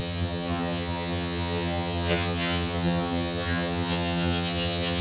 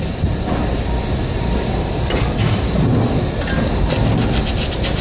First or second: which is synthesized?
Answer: first